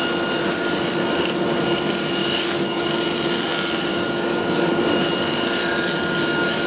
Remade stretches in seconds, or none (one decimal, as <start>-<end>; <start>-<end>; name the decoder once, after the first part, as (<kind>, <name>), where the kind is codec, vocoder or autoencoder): 2.2-2.9 (codec, DAC); 3.9-4.8